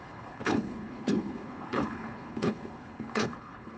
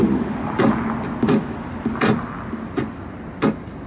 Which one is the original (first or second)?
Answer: second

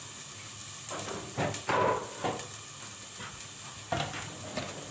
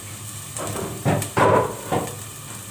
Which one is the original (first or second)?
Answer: first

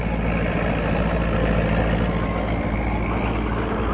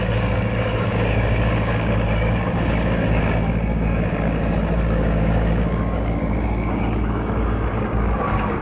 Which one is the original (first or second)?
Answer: first